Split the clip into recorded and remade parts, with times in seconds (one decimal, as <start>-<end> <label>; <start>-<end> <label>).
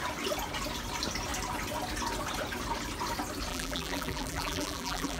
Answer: 0.0-3.5 recorded; 3.5-5.2 remade